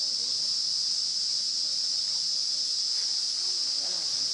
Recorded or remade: recorded